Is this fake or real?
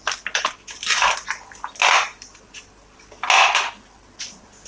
real